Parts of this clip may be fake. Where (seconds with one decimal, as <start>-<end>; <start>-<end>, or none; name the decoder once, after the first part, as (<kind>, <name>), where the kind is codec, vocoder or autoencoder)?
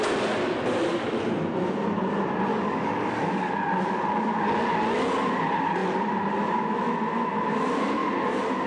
2.5-3.5 (codec, DAC)